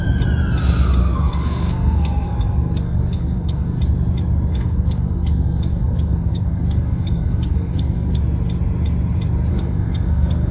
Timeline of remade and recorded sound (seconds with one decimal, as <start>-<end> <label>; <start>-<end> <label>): 0.0-1.0 recorded; 1.0-3.8 remade; 3.8-4.5 recorded; 4.5-8.2 remade; 8.2-9.5 recorded; 9.5-10.5 remade